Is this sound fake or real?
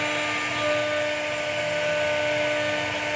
real